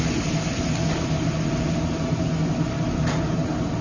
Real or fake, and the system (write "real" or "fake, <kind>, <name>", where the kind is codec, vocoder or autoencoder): real